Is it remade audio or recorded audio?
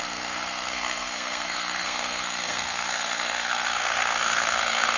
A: remade